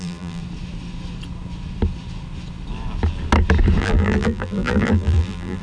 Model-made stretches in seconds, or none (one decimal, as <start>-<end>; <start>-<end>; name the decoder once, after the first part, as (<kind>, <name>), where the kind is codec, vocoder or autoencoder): 0.0-0.4 (vocoder, BigVGAN v2); 3.8-5.6